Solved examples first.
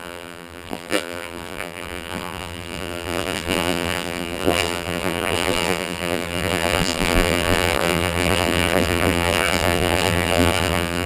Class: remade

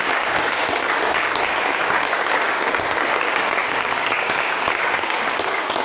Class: remade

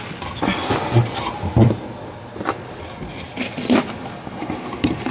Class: recorded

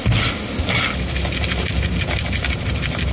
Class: recorded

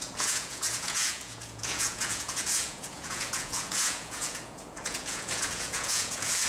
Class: remade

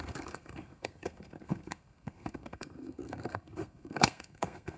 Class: remade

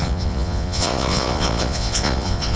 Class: remade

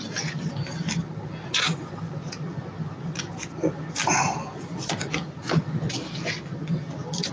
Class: recorded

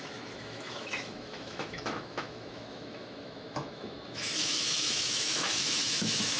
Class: remade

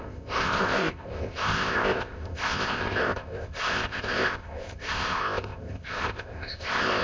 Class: remade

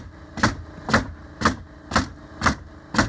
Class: recorded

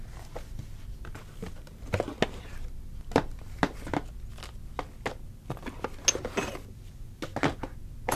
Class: recorded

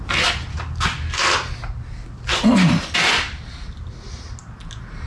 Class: recorded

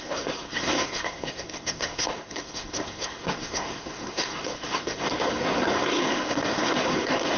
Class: remade